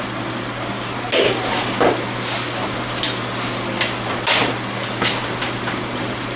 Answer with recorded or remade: recorded